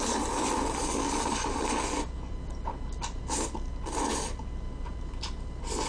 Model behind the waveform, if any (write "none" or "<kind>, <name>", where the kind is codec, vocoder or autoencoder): none